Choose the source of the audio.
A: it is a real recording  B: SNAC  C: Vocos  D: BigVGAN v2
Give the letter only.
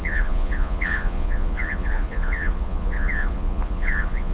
C